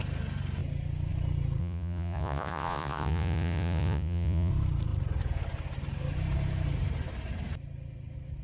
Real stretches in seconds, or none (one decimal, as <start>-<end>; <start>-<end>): 0.0-1.6; 4.5-8.4